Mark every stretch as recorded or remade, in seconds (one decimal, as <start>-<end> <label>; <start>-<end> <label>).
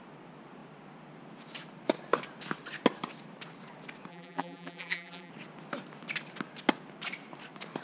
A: 0.0-4.1 recorded; 4.1-5.3 remade; 5.3-7.8 recorded